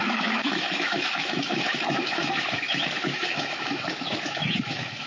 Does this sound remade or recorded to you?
remade